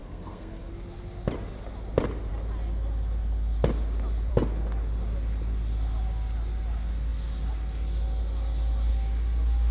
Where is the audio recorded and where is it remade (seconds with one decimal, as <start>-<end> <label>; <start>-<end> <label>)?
0.0-0.7 remade; 0.7-9.7 recorded